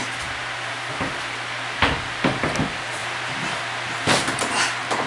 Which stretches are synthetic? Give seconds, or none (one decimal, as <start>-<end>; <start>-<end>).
3.0-4.1